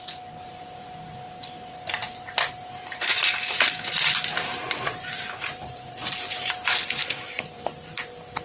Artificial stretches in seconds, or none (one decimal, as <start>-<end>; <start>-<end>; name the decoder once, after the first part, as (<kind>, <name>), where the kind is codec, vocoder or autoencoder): 4.5-6.5 (vocoder, BigVGAN v2); 7.0-7.8